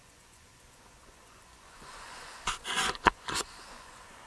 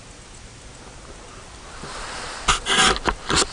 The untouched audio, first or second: second